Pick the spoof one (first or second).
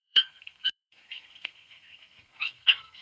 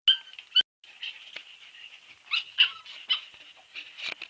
first